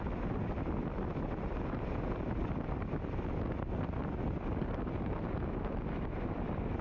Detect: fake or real real